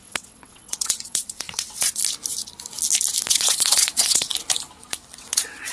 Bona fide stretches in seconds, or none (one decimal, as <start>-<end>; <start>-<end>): 2.0-3.3; 4.3-5.2